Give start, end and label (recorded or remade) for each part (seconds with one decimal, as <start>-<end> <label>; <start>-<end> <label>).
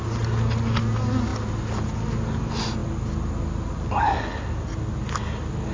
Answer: 0.0-5.7 recorded